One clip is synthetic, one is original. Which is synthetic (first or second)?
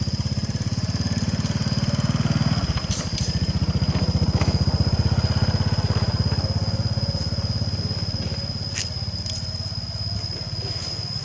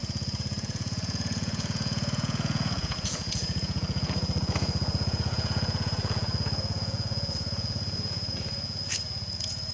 second